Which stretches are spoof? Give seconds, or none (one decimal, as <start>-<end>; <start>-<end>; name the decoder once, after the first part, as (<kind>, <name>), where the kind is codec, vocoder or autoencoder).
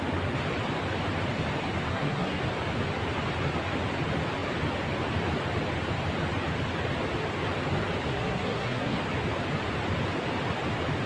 1.9-2.4 (codec, SNAC); 8.1-9.0